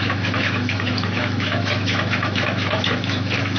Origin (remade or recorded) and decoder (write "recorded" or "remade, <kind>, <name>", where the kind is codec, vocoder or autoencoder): remade, autoencoder, DAC-VAE